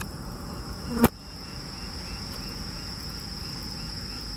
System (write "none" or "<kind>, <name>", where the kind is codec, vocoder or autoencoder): vocoder, Vocos